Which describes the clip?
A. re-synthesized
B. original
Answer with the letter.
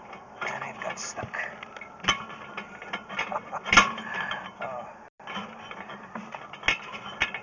B